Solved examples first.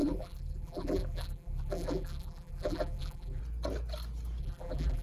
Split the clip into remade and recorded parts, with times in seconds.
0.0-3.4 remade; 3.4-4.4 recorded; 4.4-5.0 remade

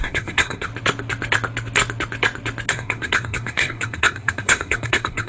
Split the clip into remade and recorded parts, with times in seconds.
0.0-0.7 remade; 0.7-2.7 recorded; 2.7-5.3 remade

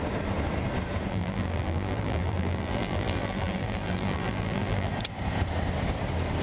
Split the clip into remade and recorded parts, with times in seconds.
0.0-1.1 recorded; 1.1-4.9 remade; 4.9-6.4 recorded

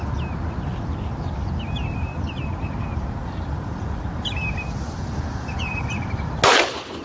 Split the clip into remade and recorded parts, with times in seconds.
0.0-3.2 recorded; 3.2-6.3 remade; 6.3-7.0 recorded